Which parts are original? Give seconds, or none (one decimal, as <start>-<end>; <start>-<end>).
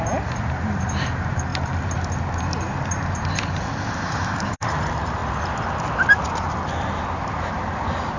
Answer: 1.5-3.3; 5.2-7.2